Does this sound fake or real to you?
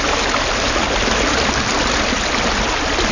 real